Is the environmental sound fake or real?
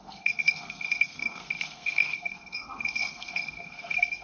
fake